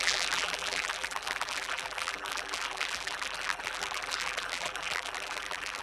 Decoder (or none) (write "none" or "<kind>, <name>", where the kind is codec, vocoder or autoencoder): vocoder, BigVGAN v2